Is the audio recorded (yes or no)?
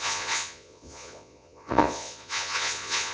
no